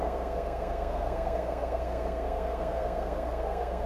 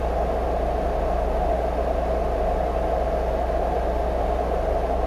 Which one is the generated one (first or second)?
first